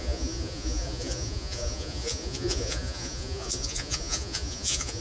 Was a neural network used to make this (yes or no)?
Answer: yes